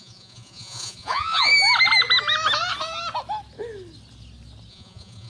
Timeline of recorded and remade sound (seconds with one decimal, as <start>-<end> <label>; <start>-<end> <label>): 0.0-1.5 remade; 1.5-4.7 recorded; 4.7-5.3 remade